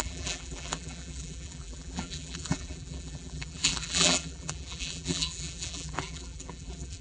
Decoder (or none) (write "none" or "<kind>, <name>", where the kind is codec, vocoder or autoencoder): vocoder, BigVGAN v2